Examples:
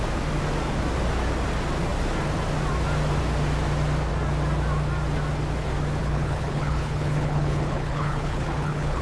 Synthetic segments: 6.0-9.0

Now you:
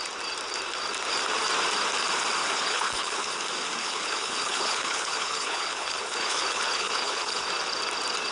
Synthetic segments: 2.4-3.3; 3.8-7.5